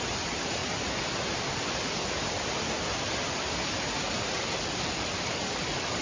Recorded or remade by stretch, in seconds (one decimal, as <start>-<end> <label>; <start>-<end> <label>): 0.0-0.6 remade; 0.6-4.2 recorded; 4.2-6.0 remade

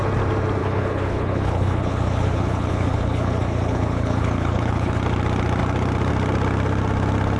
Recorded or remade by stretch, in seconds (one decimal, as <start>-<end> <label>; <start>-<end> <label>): 0.0-0.6 recorded; 0.6-5.0 remade; 5.0-7.4 recorded

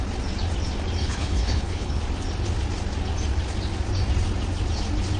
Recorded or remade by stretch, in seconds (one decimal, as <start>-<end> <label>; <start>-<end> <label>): 0.0-1.0 recorded; 1.0-2.0 remade; 2.0-5.2 recorded